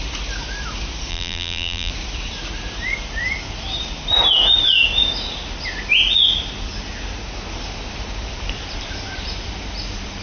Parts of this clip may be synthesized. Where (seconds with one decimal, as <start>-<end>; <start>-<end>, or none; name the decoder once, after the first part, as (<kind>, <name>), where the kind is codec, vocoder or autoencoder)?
1.1-1.9 (vocoder, BigVGAN v2)